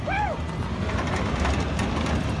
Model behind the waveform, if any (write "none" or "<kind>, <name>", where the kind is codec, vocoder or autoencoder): none